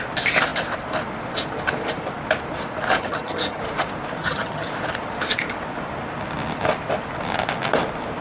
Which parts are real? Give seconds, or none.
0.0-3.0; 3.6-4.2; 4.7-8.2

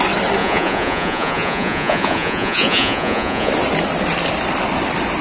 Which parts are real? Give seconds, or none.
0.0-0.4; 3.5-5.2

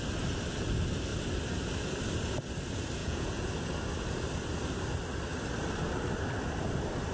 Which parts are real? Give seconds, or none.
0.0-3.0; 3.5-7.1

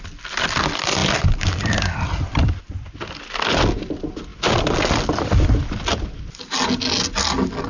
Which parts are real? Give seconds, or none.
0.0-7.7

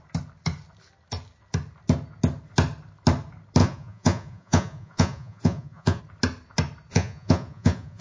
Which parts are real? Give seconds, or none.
0.0-3.6; 6.0-6.9

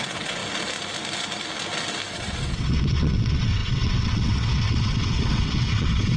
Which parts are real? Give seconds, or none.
0.4-2.1